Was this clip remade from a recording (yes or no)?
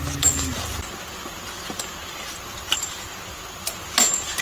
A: no